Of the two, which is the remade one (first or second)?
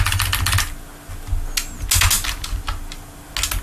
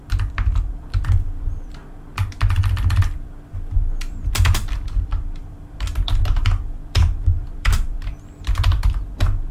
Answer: second